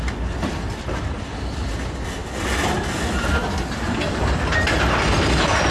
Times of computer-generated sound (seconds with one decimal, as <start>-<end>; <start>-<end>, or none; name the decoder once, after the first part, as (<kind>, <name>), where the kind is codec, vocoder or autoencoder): none